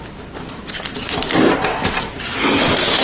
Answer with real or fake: real